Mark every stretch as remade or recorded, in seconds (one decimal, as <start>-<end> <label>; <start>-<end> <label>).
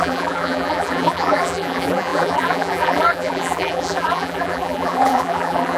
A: 0.0-5.8 remade